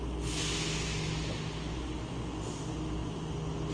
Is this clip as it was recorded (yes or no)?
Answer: yes